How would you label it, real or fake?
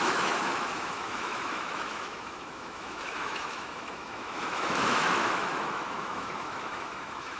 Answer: fake